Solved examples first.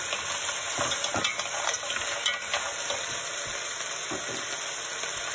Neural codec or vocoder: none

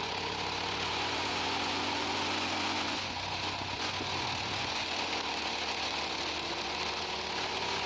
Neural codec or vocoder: vocoder, Vocos